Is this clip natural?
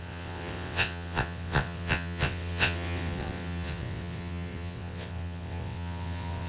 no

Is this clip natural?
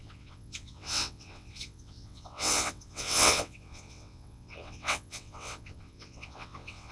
no